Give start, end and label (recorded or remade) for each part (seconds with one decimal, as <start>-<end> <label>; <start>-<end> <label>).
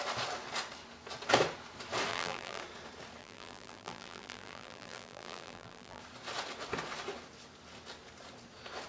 0.0-2.1 recorded; 2.1-2.6 remade; 2.6-3.2 recorded; 3.2-6.0 remade; 6.0-8.9 recorded